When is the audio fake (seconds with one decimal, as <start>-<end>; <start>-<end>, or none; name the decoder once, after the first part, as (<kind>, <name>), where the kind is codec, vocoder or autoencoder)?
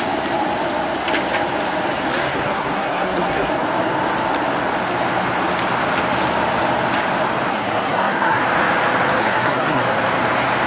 2.1-3.5 (codec, SNAC); 7.5-8.4; 9.2-9.8